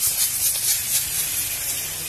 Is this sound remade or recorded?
recorded